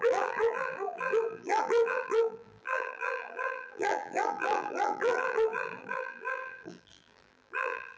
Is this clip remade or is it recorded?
remade